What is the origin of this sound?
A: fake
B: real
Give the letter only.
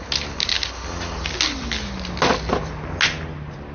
B